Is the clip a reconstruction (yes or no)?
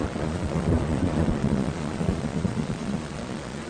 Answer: yes